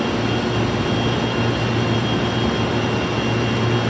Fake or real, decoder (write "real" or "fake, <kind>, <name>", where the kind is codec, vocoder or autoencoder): real